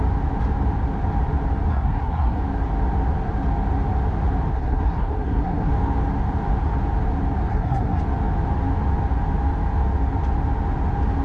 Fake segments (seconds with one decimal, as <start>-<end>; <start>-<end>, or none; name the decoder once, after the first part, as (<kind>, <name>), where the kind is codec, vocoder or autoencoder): 1.7-2.4 (codec, SNAC); 4.5-5.7; 7.5-8.0